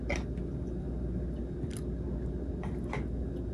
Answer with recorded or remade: recorded